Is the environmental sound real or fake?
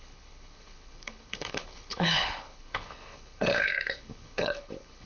fake